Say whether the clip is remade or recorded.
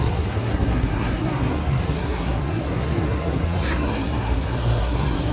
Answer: remade